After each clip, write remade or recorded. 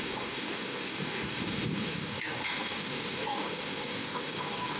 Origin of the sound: remade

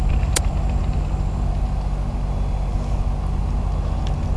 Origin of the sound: recorded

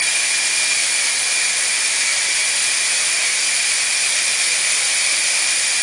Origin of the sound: recorded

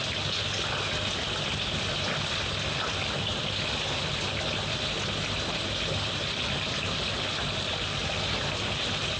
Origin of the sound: recorded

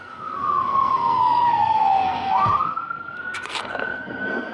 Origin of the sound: remade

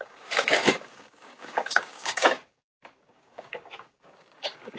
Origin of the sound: remade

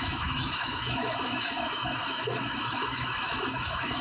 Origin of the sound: remade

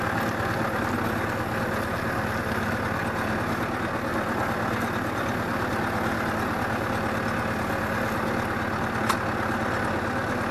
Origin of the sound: recorded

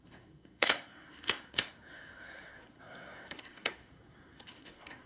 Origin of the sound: remade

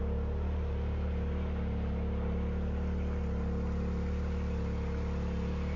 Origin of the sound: recorded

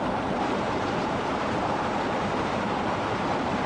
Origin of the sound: remade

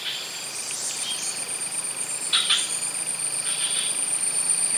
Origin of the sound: remade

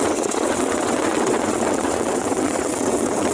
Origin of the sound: remade